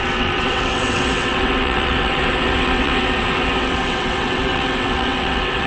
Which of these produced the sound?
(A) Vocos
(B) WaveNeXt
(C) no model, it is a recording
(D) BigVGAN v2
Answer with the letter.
B